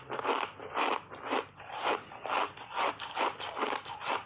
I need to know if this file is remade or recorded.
remade